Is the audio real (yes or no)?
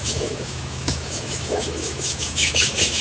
no